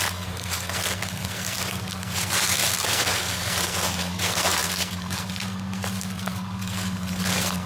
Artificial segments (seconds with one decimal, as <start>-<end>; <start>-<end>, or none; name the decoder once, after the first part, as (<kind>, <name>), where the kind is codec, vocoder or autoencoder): 0.0-7.7 (codec, SNAC)